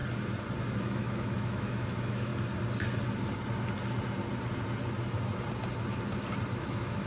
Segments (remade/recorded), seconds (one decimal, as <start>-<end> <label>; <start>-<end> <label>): 0.0-0.8 recorded; 0.8-2.3 remade; 2.3-6.6 recorded; 6.6-7.1 remade